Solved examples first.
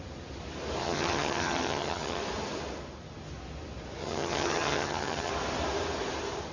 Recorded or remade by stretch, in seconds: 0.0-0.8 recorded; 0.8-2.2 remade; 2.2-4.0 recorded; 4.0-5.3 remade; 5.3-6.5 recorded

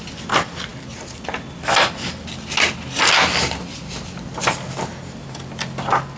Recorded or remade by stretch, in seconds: 0.0-6.2 recorded

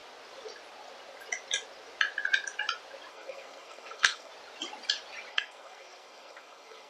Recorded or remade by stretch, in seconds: 0.0-3.1 recorded; 3.1-4.3 remade; 4.3-5.3 recorded; 5.3-6.9 remade

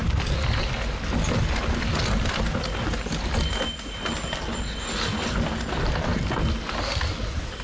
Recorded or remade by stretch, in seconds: 0.0-7.6 recorded